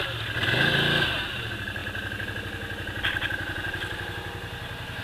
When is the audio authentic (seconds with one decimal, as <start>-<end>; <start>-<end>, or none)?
0.0-5.0